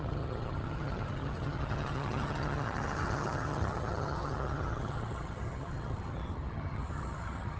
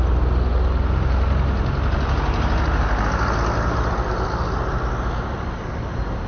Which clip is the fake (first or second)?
first